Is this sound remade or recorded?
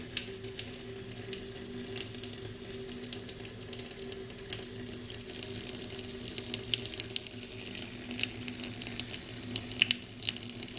recorded